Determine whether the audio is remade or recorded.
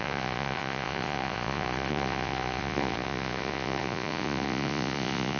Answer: remade